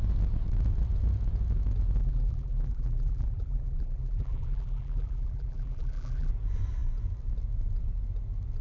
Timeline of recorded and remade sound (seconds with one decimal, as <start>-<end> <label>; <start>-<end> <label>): 0.0-2.0 recorded; 2.0-6.3 remade; 6.3-8.6 recorded